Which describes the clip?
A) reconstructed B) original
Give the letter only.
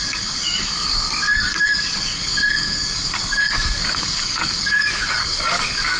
A